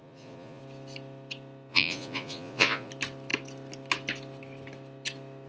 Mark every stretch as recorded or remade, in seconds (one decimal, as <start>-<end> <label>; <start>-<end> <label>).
0.0-0.6 remade; 0.6-1.7 recorded; 1.7-2.9 remade; 2.9-5.5 recorded